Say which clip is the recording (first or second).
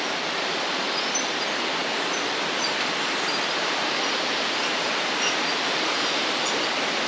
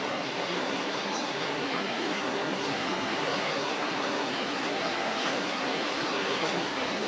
first